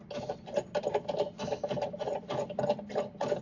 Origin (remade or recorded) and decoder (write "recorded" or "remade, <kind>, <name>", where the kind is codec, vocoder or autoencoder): recorded